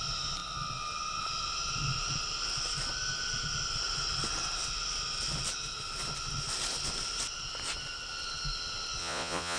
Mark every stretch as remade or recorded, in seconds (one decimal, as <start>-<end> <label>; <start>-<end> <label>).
0.0-9.0 recorded; 9.0-9.6 remade